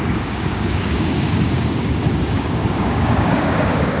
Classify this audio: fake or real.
fake